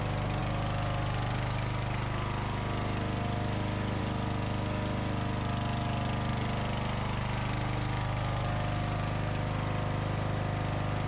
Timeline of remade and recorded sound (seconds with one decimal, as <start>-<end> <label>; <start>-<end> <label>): 0.0-11.1 recorded